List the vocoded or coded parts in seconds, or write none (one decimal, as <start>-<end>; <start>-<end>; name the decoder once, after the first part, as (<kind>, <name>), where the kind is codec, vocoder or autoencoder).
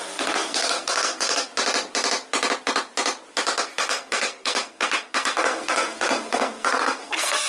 0.0-1.5 (codec, SNAC); 3.6-7.5